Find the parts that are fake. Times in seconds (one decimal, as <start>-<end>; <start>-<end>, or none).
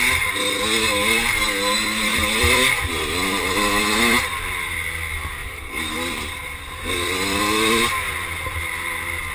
2.1-3.8; 5.4-7.4